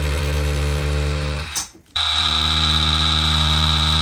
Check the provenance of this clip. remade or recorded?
remade